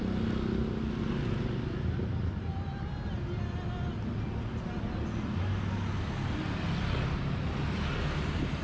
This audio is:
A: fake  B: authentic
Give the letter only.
B